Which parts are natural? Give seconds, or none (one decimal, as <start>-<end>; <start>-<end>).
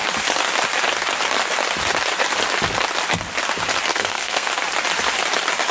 0.0-3.9; 4.5-5.7